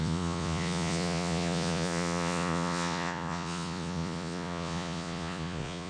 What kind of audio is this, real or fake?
fake